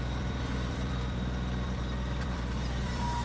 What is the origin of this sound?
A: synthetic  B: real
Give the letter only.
A